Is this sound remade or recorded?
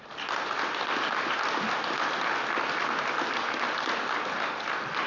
recorded